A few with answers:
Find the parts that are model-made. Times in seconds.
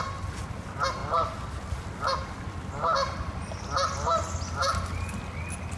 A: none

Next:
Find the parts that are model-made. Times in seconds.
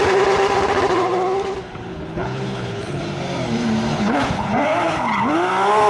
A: 1.9-3.0 (codec, HILCodec); 3.9-4.5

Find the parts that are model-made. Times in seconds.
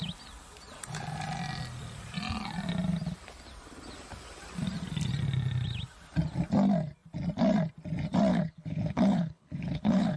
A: 8.3-10.2 (codec, HILCodec)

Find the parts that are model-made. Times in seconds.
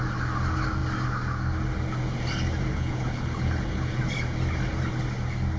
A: 2.7-4.0 (codec, HILCodec)